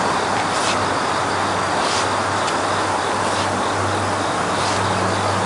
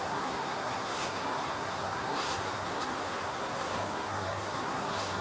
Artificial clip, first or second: second